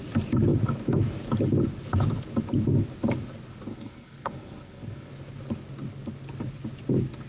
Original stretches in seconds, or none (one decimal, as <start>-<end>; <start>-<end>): 0.0-3.7; 5.1-7.3